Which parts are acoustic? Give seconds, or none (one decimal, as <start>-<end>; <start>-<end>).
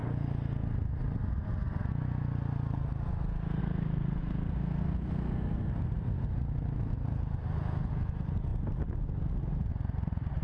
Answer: 0.0-3.6; 5.7-10.4